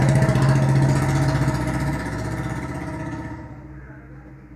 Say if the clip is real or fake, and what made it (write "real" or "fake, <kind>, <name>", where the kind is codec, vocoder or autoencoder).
real